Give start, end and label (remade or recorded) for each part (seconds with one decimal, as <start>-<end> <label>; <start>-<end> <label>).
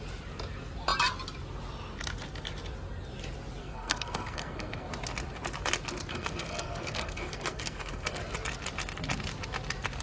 0.0-3.6 recorded; 3.6-4.9 remade; 4.9-6.1 recorded; 6.1-8.2 remade; 8.2-10.0 recorded